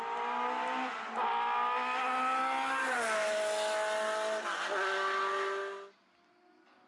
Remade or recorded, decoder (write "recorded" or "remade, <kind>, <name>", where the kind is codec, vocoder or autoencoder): recorded